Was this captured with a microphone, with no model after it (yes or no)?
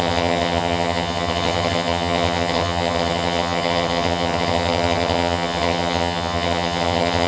no